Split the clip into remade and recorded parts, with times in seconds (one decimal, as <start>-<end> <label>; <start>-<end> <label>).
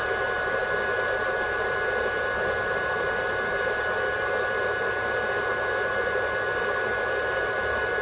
0.0-8.0 recorded